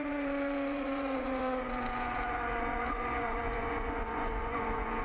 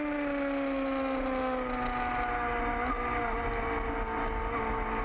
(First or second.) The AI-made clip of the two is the first